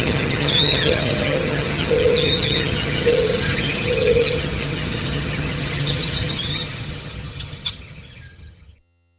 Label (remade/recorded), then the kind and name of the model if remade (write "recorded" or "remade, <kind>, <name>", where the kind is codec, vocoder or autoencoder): remade, vocoder, HiFi-GAN